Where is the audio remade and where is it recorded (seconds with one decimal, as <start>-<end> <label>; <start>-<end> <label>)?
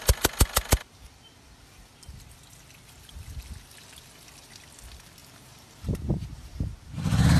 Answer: 0.0-5.2 recorded; 5.2-6.9 remade; 6.9-7.4 recorded